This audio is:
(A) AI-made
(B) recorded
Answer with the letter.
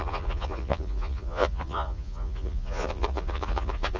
A